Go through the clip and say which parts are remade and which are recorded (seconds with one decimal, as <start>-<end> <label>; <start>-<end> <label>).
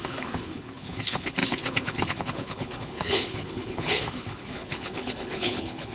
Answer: 0.0-5.9 remade